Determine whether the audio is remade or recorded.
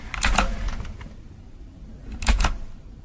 recorded